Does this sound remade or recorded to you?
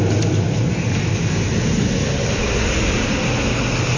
recorded